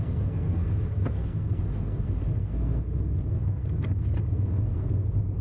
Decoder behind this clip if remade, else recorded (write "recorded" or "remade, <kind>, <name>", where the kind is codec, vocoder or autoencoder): remade, codec, SNAC